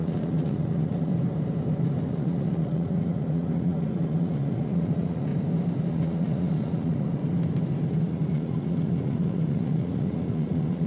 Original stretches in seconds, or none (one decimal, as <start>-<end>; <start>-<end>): 1.1-2.1; 5.3-5.9; 7.2-7.9